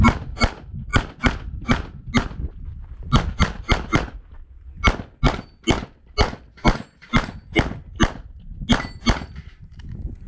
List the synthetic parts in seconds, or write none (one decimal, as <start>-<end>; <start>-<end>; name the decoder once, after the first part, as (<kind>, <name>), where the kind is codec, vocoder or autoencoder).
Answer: none